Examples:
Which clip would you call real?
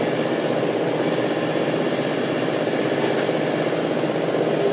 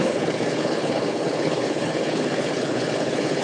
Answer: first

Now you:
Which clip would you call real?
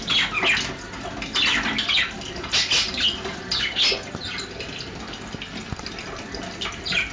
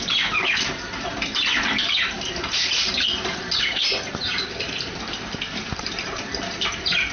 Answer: first